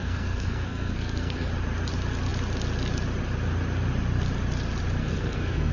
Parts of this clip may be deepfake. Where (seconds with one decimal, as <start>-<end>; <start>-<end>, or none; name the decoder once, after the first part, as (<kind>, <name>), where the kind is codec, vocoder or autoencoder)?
0.0-1.5 (codec, SNAC); 5.0-5.7